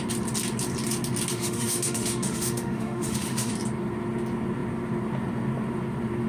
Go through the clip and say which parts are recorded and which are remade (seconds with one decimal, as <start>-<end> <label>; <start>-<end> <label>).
0.0-1.3 recorded; 1.3-3.5 remade; 3.5-6.3 recorded